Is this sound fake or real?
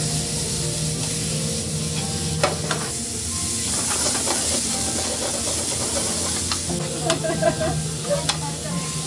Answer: real